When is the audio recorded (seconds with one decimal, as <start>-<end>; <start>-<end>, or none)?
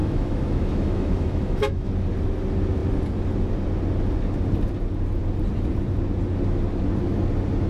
1.9-7.7